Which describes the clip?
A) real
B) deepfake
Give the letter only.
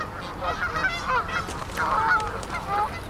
A